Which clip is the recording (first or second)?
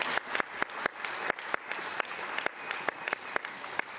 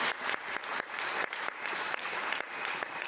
first